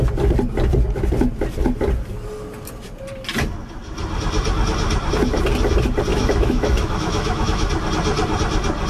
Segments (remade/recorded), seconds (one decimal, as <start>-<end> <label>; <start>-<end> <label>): 0.0-6.1 recorded; 6.1-7.7 remade; 7.7-8.9 recorded